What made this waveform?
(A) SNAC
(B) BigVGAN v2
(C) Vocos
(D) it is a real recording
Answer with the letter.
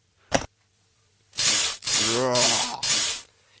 B